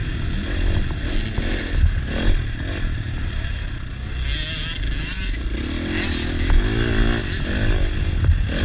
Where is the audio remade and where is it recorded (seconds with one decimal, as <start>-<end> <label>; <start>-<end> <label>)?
0.0-8.6 recorded